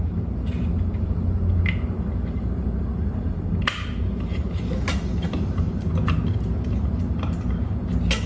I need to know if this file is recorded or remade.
recorded